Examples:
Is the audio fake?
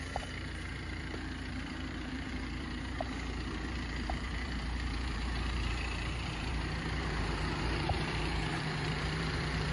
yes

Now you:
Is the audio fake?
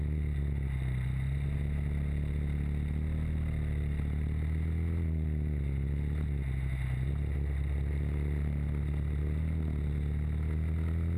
no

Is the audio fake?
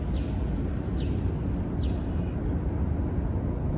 no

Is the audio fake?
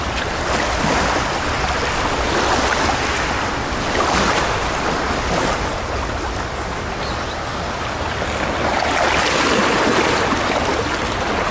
no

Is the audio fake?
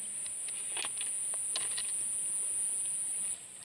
no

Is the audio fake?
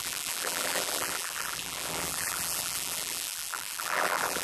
yes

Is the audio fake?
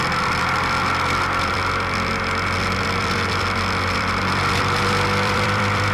yes